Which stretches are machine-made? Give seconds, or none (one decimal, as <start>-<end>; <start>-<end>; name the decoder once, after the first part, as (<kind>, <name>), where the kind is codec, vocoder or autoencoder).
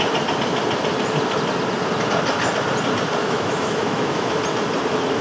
3.2-4.4 (autoencoder, DAC-VAE)